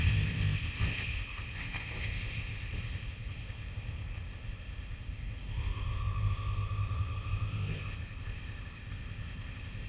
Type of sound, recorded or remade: remade